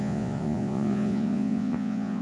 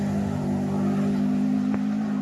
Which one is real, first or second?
second